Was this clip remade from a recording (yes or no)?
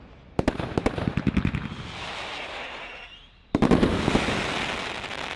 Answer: no